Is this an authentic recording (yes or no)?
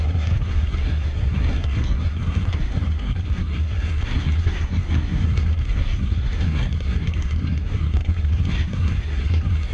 no